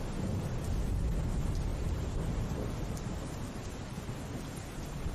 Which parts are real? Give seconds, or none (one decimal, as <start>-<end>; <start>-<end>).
0.0-1.7; 4.1-5.1